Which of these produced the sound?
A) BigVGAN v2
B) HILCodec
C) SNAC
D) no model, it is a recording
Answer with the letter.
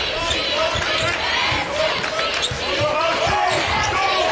A